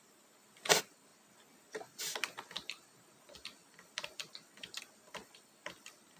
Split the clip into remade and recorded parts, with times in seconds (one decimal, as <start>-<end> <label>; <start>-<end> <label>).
0.0-6.2 recorded